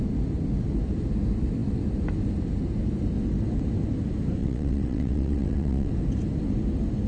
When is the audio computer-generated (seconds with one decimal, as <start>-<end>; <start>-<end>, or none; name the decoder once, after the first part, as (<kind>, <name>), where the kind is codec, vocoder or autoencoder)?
4.4-5.9 (vocoder, WaveNeXt)